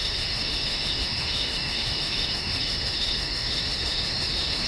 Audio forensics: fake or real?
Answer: fake